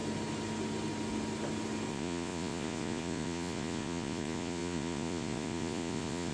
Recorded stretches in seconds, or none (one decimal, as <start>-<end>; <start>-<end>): 0.0-1.9